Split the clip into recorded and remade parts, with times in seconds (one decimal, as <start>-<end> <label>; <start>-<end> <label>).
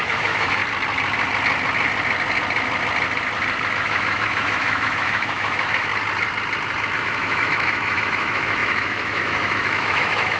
0.0-0.6 remade; 0.6-3.7 recorded; 3.7-5.9 remade; 5.9-7.0 recorded; 7.0-10.4 remade